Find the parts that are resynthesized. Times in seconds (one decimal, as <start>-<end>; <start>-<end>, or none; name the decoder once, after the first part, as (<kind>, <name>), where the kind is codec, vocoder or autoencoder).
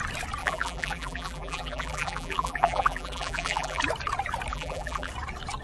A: 0.4-3.8 (vocoder, BigVGAN v2); 4.5-5.1